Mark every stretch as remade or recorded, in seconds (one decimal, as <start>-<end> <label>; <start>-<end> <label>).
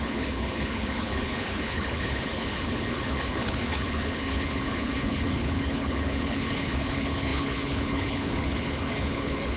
0.0-9.6 remade